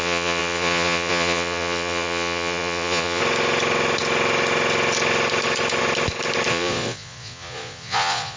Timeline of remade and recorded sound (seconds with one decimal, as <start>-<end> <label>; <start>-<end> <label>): 0.0-3.2 remade; 3.2-6.5 recorded; 6.5-8.4 remade